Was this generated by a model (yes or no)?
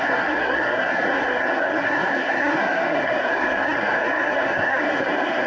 yes